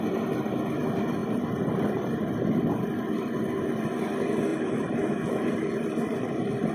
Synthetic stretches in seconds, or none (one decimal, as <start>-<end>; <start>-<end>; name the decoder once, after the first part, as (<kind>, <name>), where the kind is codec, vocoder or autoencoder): 1.2-2.9 (vocoder, BigVGAN v2); 4.5-6.7